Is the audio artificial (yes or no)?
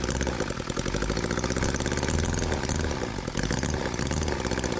no